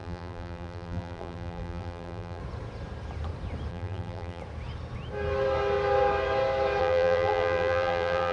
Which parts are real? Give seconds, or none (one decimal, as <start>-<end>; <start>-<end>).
2.4-3.7; 4.4-6.8